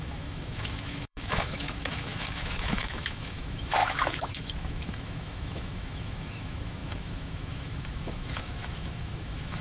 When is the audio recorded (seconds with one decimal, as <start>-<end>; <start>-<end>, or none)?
none